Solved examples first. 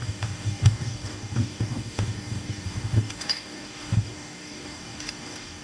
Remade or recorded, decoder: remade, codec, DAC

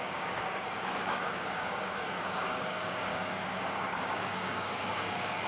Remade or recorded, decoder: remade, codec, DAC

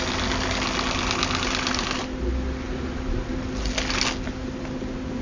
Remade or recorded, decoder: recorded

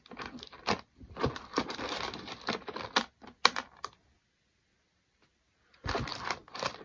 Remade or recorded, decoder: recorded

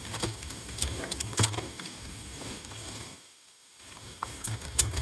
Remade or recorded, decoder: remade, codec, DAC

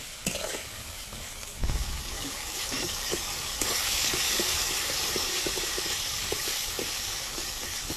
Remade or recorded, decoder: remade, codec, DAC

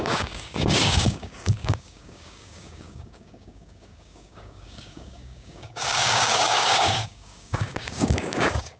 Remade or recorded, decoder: remade, codec, DAC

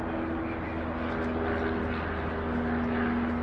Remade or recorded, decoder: recorded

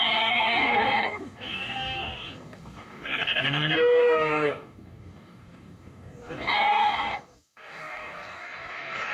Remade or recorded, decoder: remade, codec, DAC